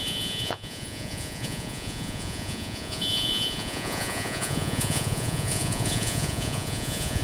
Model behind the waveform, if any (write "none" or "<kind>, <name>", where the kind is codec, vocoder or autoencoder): vocoder, Vocos